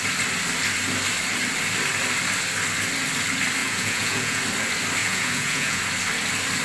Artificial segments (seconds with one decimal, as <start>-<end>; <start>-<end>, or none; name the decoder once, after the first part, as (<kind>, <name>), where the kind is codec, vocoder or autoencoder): 3.6-4.4 (vocoder, Vocos); 5.0-5.8